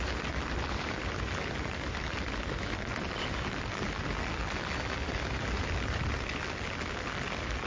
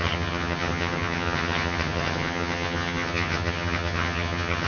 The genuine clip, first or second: first